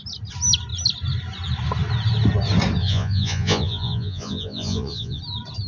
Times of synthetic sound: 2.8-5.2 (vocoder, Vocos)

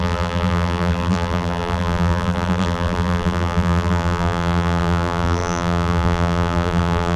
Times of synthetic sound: 0.0-7.2 (vocoder, BigVGAN v2)